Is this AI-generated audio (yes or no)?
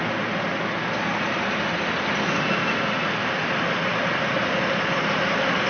no